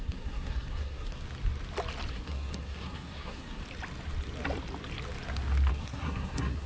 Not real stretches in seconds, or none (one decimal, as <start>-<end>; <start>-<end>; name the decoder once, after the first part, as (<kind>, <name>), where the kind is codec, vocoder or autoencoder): 0.0-1.2 (codec, SNAC); 2.1-3.6; 5.7-6.7